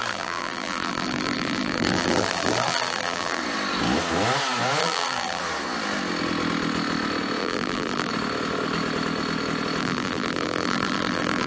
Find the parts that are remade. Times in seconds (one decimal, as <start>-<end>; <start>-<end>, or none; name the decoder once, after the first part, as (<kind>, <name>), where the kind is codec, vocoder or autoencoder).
0.0-3.4 (vocoder, BigVGAN v2); 4.8-5.4; 7.4-8.1; 9.8-11.5